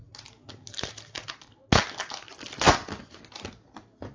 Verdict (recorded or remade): recorded